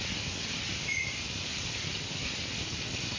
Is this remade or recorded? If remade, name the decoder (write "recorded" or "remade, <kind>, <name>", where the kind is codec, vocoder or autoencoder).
recorded